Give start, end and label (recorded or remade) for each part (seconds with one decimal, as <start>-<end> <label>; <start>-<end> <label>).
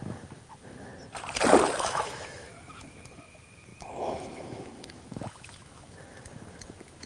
0.0-0.9 remade; 0.9-1.8 recorded; 1.8-7.1 remade